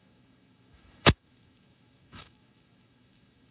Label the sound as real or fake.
fake